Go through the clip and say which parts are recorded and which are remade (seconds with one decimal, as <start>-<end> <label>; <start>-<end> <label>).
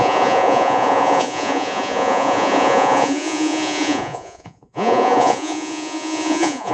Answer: 0.0-6.7 remade